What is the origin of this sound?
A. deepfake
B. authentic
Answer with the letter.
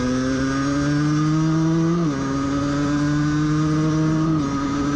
B